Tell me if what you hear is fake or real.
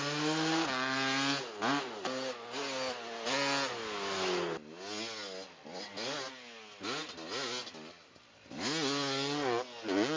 real